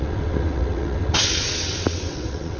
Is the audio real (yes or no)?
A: no